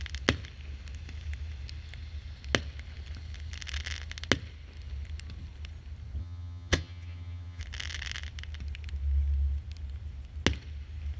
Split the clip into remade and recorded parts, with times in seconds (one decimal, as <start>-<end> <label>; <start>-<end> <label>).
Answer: 0.0-6.2 recorded; 6.2-7.6 remade; 7.6-11.2 recorded